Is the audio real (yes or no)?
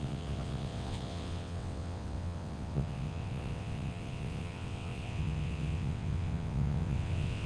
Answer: no